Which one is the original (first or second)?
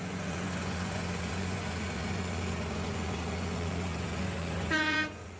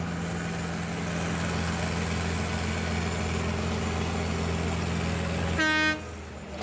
second